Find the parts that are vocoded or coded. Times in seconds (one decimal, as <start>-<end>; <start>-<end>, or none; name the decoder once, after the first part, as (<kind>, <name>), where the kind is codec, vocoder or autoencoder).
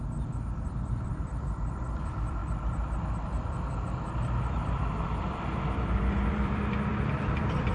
0.0-7.7 (vocoder, BigVGAN v2)